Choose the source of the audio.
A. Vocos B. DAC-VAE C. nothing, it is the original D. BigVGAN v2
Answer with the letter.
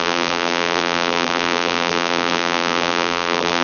D